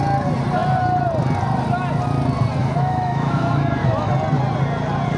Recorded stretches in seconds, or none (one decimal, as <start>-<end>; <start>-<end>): 0.0-2.6; 4.1-5.2